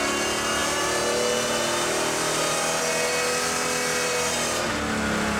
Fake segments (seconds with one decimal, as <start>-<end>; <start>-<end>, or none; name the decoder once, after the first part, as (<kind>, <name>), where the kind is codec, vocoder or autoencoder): 0.6-2.8 (vocoder, BigVGAN v2)